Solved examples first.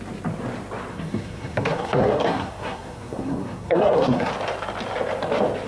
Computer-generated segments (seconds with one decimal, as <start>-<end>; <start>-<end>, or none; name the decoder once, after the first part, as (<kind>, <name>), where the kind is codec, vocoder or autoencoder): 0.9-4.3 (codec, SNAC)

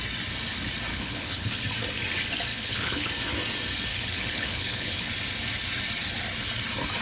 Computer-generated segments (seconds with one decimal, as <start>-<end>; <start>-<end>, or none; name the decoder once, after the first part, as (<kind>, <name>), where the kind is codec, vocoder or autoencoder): 0.9-1.6 (codec, HILCodec); 2.5-3.1; 3.9-5.1

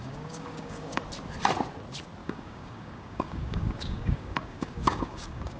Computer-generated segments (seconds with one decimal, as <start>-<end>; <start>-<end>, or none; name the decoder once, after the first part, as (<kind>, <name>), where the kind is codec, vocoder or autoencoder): 0.0-1.0 (codec, DAC); 2.2-5.6

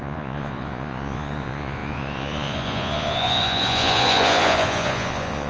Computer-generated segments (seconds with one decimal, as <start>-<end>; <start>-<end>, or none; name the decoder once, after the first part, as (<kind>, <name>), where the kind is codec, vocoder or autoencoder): 0.0-5.5 (vocoder, Vocos)

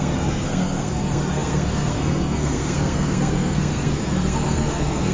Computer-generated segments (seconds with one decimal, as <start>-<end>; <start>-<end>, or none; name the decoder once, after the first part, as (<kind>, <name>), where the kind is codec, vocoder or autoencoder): 0.0-5.1 (codec, SNAC)

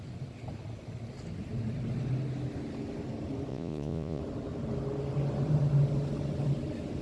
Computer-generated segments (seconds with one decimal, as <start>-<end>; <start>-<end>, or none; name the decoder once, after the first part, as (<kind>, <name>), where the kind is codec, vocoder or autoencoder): 3.5-4.2 (vocoder, Vocos)

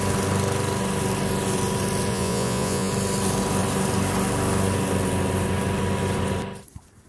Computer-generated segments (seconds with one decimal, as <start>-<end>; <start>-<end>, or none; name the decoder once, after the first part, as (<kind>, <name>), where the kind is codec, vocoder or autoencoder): 2.1-2.9 (vocoder, Vocos)